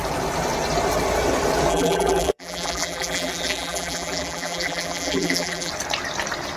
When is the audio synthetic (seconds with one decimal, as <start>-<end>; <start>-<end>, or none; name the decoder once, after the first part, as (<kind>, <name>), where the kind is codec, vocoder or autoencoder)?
1.7-5.7 (vocoder, BigVGAN v2)